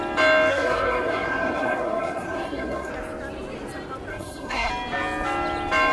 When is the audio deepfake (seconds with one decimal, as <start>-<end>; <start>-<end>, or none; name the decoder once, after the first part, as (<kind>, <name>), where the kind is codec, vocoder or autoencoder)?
0.5-2.9 (codec, SNAC); 4.1-4.7